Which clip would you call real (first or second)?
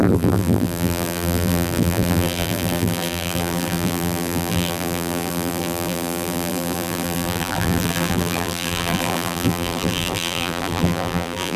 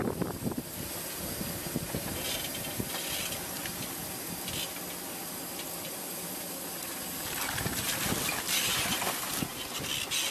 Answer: second